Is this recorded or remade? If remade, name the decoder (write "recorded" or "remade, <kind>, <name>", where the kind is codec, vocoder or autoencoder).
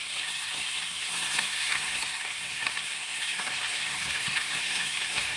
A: remade, codec, SNAC